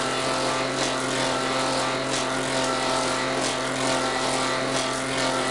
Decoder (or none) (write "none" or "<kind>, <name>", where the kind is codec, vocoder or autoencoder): none